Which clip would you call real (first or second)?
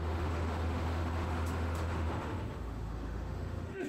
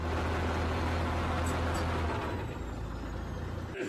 second